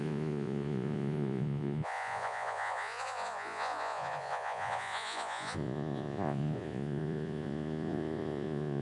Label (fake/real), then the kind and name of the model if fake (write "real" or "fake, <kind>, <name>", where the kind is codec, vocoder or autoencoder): fake, vocoder, Vocos